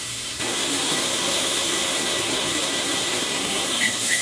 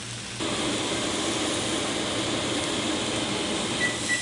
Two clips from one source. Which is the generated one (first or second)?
first